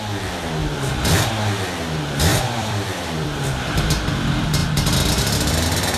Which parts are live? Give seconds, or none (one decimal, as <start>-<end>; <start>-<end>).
0.0-0.6; 1.3-2.3; 3.4-6.0